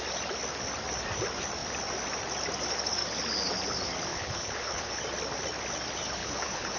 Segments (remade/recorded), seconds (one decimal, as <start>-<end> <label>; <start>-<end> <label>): 0.0-4.1 recorded; 4.1-4.9 remade; 4.9-6.2 recorded; 6.2-6.8 remade